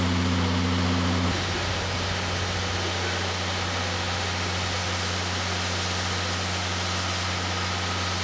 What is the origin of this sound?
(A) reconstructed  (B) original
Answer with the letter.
B